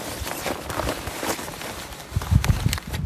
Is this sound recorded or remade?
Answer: recorded